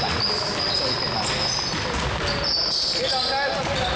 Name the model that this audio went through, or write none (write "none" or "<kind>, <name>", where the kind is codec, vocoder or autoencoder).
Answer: none